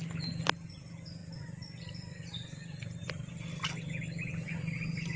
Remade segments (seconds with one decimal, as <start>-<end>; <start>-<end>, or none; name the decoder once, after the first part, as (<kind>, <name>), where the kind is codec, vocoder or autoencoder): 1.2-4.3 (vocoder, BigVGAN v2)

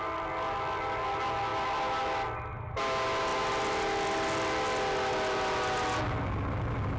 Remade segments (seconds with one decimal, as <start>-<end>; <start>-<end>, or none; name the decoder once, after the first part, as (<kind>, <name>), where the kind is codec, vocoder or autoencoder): none

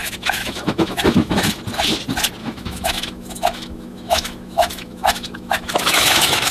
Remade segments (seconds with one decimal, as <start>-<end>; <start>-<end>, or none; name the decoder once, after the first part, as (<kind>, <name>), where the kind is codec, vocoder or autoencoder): 0.0-1.6 (autoencoder, DAC-VAE); 2.4-6.5

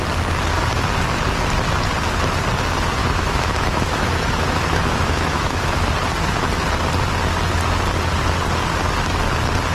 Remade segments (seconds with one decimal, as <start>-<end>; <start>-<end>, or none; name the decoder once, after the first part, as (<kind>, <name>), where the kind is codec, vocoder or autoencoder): 3.0-5.9 (autoencoder, DAC-VAE)

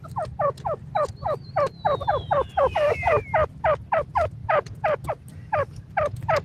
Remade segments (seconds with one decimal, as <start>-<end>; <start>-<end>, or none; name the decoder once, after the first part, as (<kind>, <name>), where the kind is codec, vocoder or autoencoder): 2.1-3.2 (vocoder, Vocos); 4.4-5.1